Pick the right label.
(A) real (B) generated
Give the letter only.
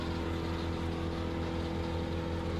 A